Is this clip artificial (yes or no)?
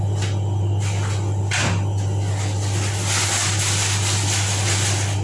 no